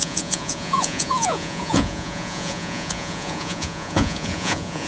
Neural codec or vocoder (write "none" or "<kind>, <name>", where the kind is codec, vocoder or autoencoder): vocoder, Vocos